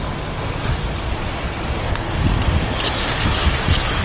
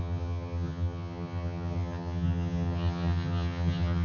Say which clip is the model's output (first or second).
second